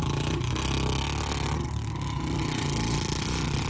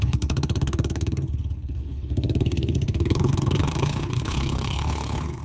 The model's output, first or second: second